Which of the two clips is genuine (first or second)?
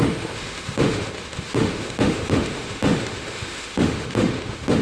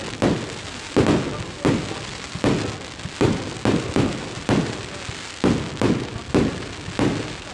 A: second